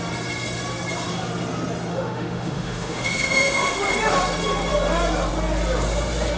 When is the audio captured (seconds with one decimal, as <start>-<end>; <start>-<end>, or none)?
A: 0.0-1.9; 3.9-6.4